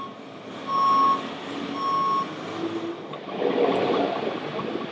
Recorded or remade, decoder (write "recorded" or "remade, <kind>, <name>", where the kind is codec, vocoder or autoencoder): recorded